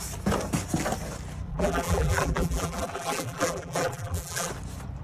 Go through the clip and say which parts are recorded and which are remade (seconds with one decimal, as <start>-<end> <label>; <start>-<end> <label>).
0.0-1.5 recorded; 1.5-4.5 remade; 4.5-5.0 recorded